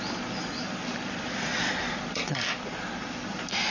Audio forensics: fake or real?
real